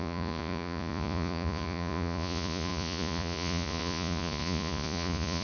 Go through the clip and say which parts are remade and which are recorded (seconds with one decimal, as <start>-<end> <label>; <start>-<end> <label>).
0.0-5.4 remade